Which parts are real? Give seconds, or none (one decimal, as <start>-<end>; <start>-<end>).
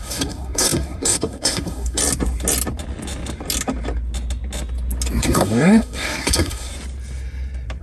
2.0-5.2; 6.7-7.8